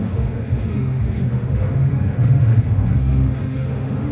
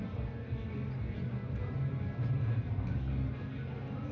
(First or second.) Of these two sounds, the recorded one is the second